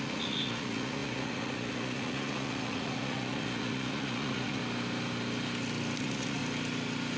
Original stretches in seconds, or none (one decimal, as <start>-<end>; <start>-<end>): 4.6-6.0; 6.4-7.2